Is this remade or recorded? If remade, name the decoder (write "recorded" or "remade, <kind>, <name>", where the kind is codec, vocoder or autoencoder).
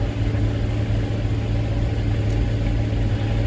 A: recorded